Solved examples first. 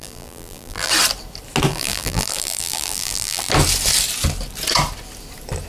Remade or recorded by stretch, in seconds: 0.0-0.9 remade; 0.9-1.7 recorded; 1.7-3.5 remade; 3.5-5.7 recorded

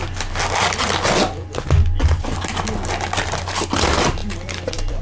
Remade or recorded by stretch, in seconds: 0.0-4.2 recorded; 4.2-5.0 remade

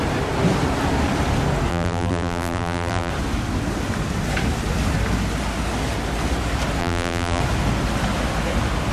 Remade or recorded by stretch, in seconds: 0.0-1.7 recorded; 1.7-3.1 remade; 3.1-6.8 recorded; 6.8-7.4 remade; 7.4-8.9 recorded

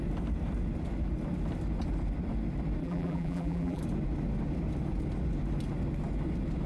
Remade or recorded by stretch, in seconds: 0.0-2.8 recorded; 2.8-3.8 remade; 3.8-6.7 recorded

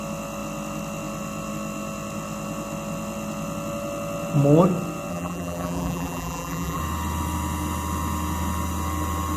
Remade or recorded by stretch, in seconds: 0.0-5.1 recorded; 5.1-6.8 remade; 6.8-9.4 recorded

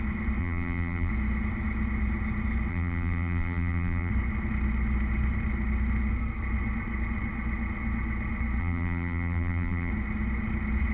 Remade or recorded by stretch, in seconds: 0.0-0.4 recorded; 0.4-1.1 remade; 1.1-2.7 recorded; 2.7-4.1 remade; 4.1-8.6 recorded; 8.6-9.9 remade; 9.9-10.9 recorded

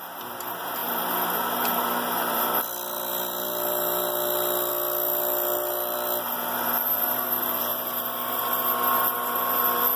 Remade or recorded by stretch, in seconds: 0.0-0.8 recorded; 0.8-4.7 remade; 4.7-10.0 recorded

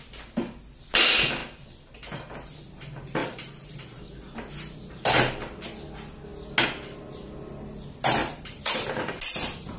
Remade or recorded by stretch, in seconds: 0.0-3.2 recorded; 3.2-4.0 remade; 4.0-8.2 recorded; 8.2-9.1 remade; 9.1-9.8 recorded